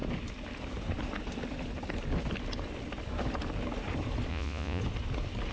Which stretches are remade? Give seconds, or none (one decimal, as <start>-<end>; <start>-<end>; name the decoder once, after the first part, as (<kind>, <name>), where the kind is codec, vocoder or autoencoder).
4.3-4.8 (vocoder, Vocos)